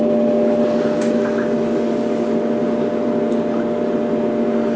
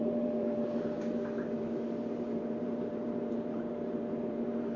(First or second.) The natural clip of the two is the first